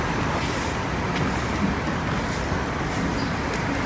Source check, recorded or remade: recorded